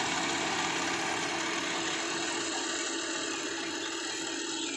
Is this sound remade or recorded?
recorded